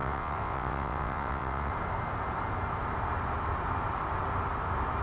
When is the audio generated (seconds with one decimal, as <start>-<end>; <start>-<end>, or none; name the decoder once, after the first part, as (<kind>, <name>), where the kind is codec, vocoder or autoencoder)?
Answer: 0.0-1.7 (vocoder, WaveNeXt)